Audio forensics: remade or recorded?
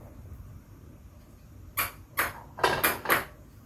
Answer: recorded